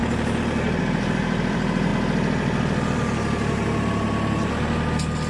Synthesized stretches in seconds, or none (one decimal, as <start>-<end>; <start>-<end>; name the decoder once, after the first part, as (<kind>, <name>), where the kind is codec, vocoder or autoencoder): 0.8-1.9 (vocoder, BigVGAN v2)